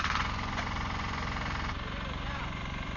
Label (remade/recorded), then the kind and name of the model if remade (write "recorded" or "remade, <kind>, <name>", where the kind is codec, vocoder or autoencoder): remade, vocoder, Vocos